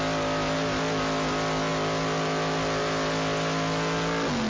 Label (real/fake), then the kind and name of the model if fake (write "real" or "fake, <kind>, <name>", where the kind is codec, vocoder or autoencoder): real